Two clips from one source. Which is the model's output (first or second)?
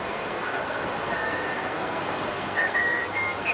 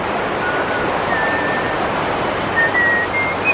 first